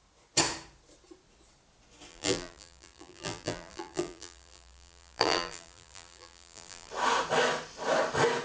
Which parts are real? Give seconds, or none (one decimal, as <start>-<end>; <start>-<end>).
0.0-2.1; 6.9-8.4